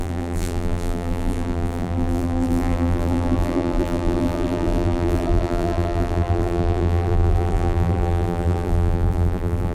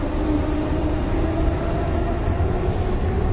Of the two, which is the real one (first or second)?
second